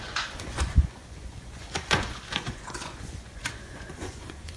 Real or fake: fake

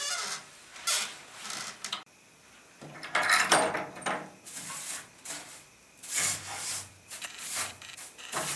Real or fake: fake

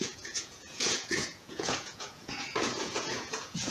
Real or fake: fake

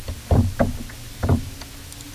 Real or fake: real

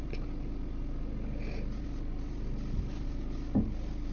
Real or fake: real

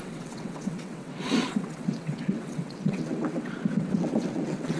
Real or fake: fake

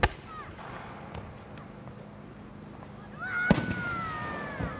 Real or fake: real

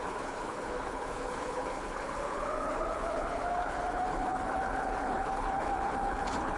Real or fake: fake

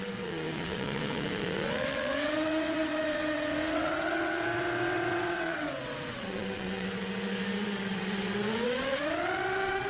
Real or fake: fake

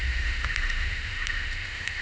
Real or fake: fake